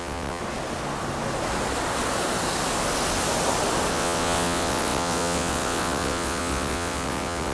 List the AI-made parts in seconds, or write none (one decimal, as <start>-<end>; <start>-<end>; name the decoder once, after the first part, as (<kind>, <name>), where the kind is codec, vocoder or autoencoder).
0.0-0.4 (vocoder, WaveNeXt); 3.9-7.5